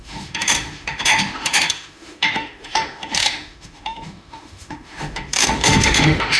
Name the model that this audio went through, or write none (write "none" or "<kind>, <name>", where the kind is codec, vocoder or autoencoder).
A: autoencoder, DAC-VAE